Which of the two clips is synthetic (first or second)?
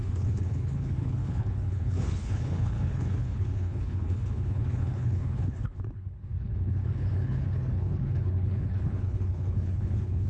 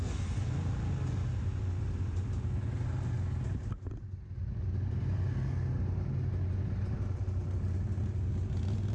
first